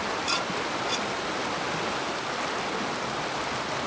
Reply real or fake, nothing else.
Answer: real